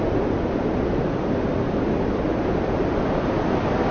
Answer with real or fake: real